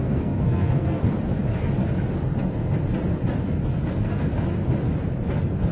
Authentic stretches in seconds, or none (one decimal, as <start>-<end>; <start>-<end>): 1.0-3.9; 4.3-5.7